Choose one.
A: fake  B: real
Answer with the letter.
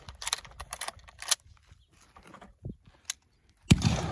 B